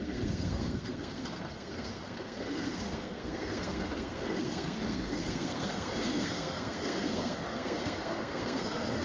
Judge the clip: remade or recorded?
remade